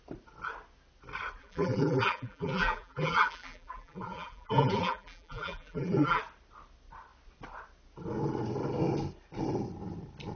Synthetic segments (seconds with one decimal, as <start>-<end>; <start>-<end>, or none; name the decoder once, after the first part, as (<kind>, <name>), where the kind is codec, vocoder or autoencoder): 1.4-6.2 (vocoder, BigVGAN v2)